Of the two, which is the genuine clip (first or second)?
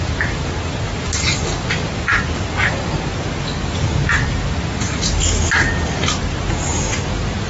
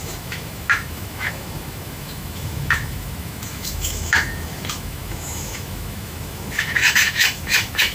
first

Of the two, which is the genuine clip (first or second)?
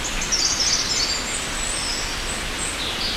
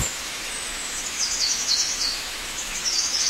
first